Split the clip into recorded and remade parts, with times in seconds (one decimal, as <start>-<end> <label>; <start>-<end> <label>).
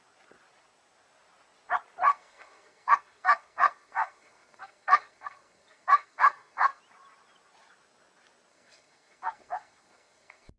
0.0-2.1 recorded; 2.1-6.8 remade; 6.8-8.5 recorded; 8.5-10.6 remade